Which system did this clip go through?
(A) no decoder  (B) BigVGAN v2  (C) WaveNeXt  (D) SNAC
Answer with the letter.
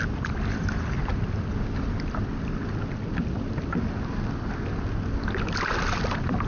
A